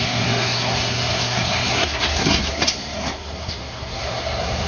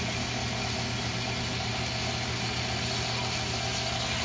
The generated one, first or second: first